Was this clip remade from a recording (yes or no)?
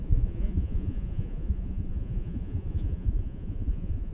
yes